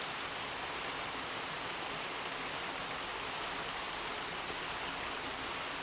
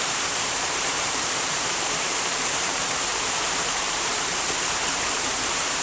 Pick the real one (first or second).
first